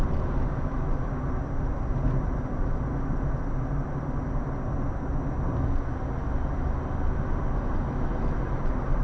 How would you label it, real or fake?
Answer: real